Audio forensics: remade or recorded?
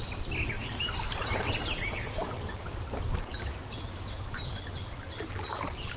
remade